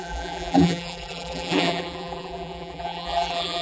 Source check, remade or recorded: remade